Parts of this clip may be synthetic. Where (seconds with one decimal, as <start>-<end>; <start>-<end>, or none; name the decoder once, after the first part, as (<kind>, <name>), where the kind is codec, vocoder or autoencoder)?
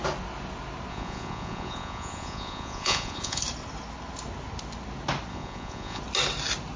0.9-3.4 (vocoder, Vocos); 5.3-6.0